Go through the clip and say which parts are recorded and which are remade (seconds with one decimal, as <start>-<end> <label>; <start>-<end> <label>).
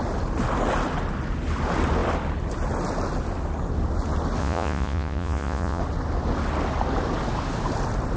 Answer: 0.0-4.4 recorded; 4.4-5.8 remade; 5.8-8.2 recorded